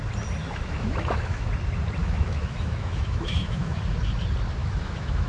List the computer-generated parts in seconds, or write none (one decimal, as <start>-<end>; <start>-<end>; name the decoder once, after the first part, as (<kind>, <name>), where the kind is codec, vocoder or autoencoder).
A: 0.4-1.5 (autoencoder, DAC-VAE); 2.0-3.8; 4.6-5.3